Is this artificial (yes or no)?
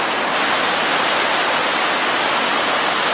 no